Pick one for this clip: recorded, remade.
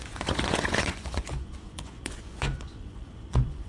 remade